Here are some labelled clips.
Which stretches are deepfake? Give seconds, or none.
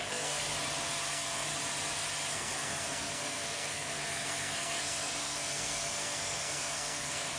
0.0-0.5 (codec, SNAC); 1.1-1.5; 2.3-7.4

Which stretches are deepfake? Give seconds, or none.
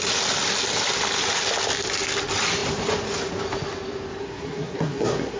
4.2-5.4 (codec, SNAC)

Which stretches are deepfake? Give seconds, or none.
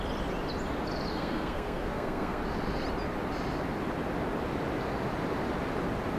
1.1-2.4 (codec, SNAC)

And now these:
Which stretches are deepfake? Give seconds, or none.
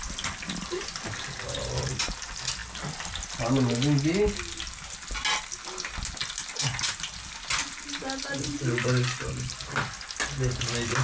none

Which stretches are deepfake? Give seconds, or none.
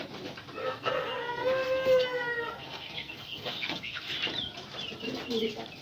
0.6-4.1 (codec, SNAC)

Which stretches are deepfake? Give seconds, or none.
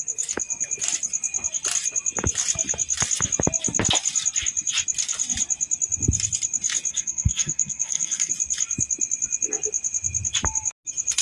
6.9-8.3 (codec, SNAC)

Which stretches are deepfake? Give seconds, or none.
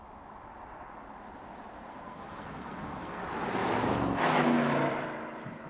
1.9-3.2 (codec, SNAC)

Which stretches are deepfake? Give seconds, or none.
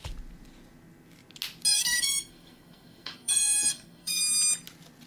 1.7-4.2 (codec, SNAC)